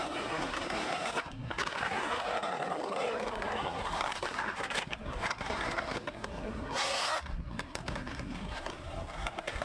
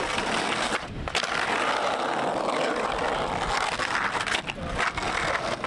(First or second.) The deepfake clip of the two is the first